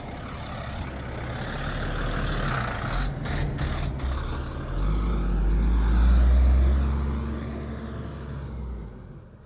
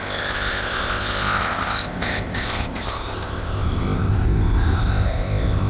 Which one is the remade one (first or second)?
second